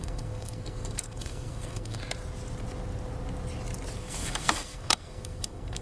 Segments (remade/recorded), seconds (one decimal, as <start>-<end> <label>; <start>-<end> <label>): 0.0-2.0 remade; 2.0-4.0 recorded; 4.0-5.8 remade